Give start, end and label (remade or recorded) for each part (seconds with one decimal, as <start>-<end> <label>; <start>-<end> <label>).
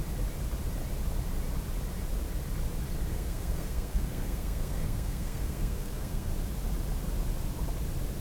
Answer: 0.0-3.1 recorded; 3.1-6.3 remade; 6.3-8.2 recorded